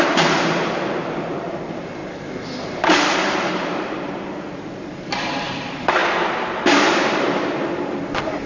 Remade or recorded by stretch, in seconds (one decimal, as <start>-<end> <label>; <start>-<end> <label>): 0.0-2.0 remade; 2.0-2.7 recorded; 2.7-8.5 remade